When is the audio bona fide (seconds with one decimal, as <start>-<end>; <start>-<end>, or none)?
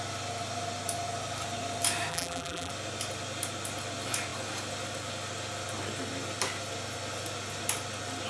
0.0-2.1; 2.7-8.3